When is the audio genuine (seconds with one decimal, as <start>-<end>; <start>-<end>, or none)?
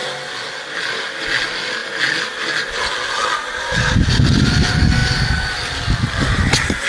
0.0-6.9